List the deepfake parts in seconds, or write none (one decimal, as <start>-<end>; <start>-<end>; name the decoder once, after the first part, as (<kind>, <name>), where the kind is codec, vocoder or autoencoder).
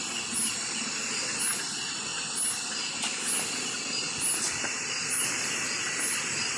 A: none